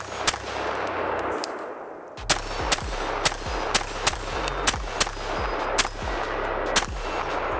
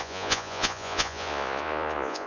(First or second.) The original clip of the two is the first